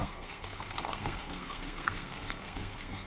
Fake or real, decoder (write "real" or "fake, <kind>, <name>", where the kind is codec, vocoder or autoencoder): fake, codec, SNAC